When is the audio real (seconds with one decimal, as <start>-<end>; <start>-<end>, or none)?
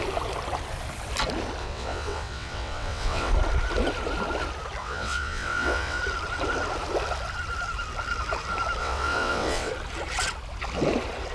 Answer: 0.0-1.6; 3.3-4.8; 6.0-8.8; 9.7-11.3